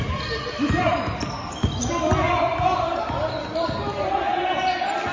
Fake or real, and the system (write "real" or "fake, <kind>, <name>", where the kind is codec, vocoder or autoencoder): real